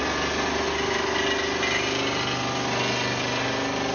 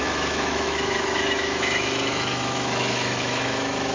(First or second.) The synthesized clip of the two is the second